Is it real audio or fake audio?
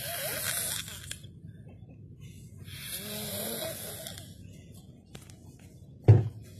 real